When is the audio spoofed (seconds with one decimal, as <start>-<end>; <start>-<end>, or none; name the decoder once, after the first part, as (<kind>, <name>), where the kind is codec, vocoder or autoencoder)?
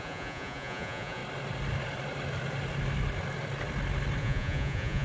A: 0.0-1.2 (vocoder, Vocos); 4.2-5.0